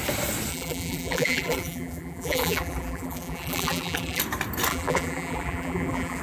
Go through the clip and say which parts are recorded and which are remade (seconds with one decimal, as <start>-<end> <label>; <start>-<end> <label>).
0.0-0.5 recorded; 0.5-4.2 remade; 4.2-4.7 recorded; 4.7-6.2 remade

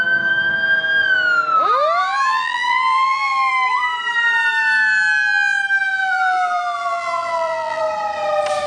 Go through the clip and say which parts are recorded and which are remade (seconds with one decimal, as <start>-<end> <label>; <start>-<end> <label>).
0.0-2.0 recorded; 2.0-3.5 remade; 3.5-5.9 recorded; 5.9-7.8 remade; 7.8-8.7 recorded

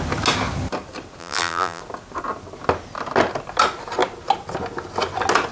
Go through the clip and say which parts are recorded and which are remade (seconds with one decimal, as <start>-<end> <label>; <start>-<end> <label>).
0.0-1.2 recorded; 1.2-1.8 remade; 1.8-5.5 recorded

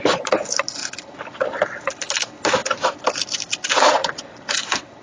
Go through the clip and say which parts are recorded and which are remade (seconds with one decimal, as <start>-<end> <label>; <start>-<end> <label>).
0.0-0.8 recorded; 0.8-1.8 remade; 1.8-5.0 recorded

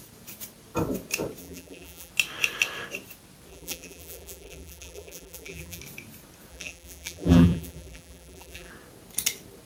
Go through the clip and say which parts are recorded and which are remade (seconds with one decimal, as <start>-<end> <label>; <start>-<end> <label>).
0.0-1.4 recorded; 1.4-2.1 remade; 2.1-3.5 recorded; 3.5-5.8 remade; 5.8-6.5 recorded; 6.5-8.7 remade; 8.7-9.7 recorded